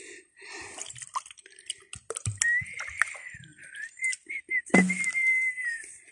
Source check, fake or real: real